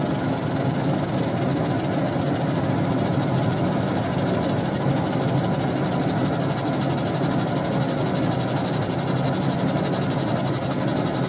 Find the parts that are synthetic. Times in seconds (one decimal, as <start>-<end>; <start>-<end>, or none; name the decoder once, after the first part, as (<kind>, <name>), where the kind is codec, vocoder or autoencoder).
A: none